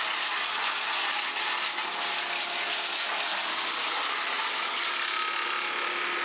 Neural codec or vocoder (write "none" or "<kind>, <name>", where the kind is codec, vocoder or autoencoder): none